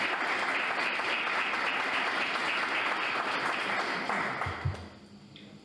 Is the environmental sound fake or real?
real